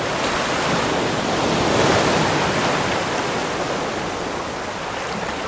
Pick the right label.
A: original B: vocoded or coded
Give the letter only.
A